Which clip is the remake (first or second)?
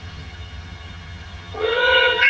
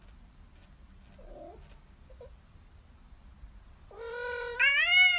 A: first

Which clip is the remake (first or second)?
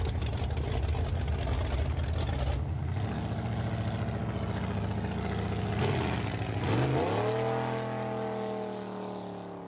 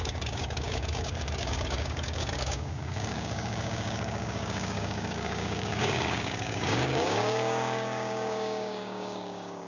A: second